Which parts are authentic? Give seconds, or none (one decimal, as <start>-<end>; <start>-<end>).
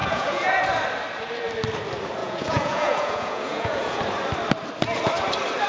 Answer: 0.6-2.2; 4.0-5.7